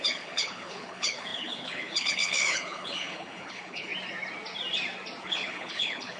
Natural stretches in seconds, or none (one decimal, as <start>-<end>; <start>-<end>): 3.9-5.2